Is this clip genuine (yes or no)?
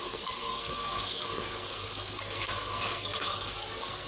no